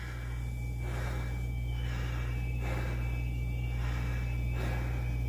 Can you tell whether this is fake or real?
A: real